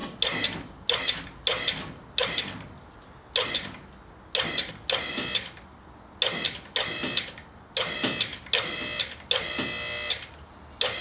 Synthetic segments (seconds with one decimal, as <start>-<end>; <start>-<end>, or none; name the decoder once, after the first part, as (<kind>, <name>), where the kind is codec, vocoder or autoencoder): none